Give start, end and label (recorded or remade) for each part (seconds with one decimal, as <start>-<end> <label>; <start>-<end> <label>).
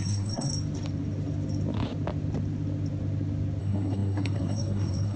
0.0-0.5 remade; 0.5-3.6 recorded; 3.6-5.2 remade